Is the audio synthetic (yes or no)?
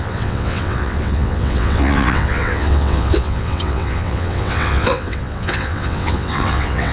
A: yes